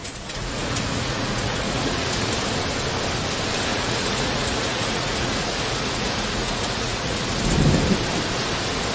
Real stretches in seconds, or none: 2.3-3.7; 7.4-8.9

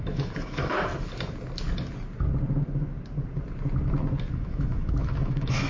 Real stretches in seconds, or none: 0.9-4.3

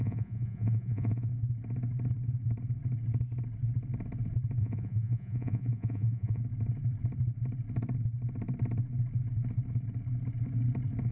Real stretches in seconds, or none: 1.3-4.6; 6.4-11.1